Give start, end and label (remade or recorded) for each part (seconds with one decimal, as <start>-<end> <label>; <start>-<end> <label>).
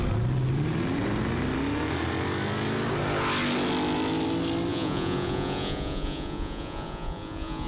0.0-4.7 recorded; 4.7-7.7 remade